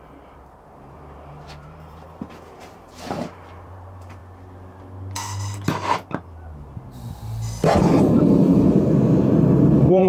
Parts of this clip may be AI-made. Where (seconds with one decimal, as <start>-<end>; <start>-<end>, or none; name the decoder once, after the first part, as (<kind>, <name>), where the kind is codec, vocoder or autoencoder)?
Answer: 0.0-4.2 (vocoder, BigVGAN v2); 8.0-10.1